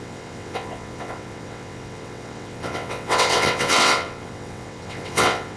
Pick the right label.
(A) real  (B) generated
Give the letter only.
B